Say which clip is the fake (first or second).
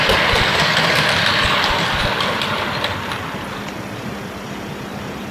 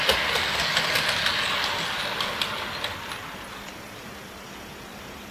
first